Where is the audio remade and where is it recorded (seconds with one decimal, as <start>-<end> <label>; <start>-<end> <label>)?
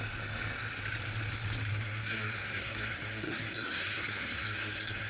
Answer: 0.0-1.7 recorded; 1.7-5.1 remade